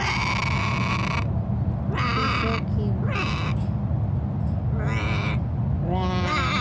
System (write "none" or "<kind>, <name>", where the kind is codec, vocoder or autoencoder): none